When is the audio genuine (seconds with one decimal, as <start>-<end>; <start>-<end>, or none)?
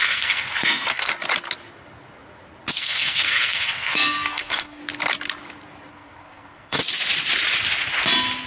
1.1-2.7; 4.8-5.9; 6.8-8.5